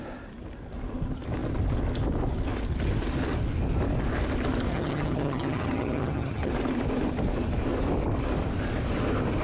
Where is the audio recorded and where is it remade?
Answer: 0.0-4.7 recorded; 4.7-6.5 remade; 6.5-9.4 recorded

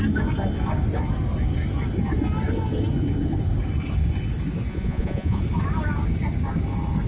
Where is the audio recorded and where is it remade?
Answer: 0.0-4.7 recorded; 4.7-5.4 remade; 5.4-7.1 recorded

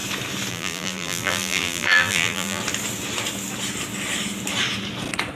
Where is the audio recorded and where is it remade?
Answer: 0.0-0.5 recorded; 0.5-2.6 remade; 2.6-5.4 recorded

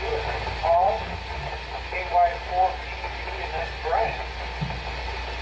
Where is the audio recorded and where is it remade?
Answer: 0.0-5.4 recorded